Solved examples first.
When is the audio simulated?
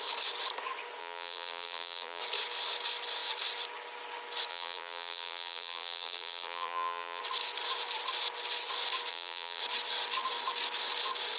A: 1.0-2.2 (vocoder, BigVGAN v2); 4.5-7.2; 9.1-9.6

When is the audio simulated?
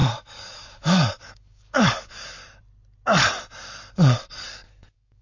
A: 0.0-2.4 (codec, DAC); 3.9-5.2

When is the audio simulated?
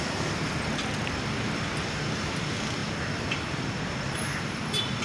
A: none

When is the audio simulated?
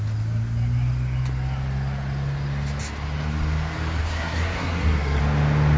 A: 4.0-5.2 (codec, SNAC)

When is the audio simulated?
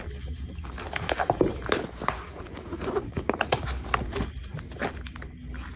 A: 2.3-3.6 (vocoder, Vocos)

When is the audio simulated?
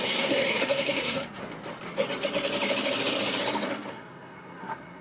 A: 0.0-1.4 (codec, SNAC); 3.9-5.0